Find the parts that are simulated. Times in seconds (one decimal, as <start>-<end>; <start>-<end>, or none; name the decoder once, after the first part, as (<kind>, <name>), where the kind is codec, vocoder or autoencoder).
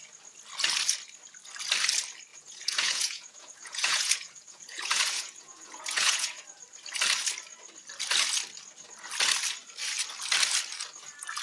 2.3-6.4 (vocoder, Vocos)